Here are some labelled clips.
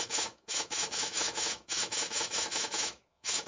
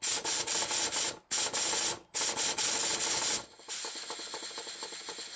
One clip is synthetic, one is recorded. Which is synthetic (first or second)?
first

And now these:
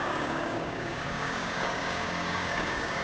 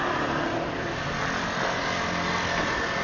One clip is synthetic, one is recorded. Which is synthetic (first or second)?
first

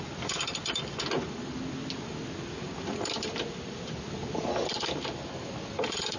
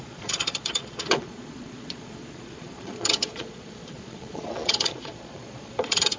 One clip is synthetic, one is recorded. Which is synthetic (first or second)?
second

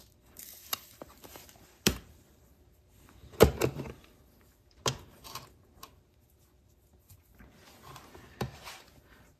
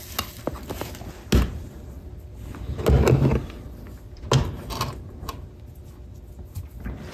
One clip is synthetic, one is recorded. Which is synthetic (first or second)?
first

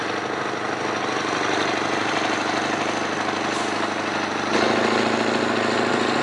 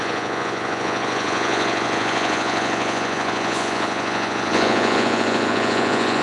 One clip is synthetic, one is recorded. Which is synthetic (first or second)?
second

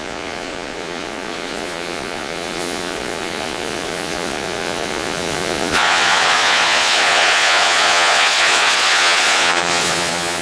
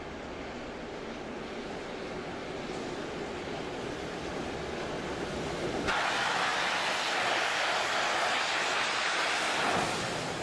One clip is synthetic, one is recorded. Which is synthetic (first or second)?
first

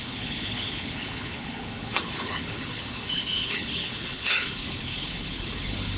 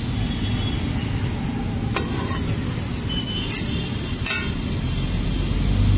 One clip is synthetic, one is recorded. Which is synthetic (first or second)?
first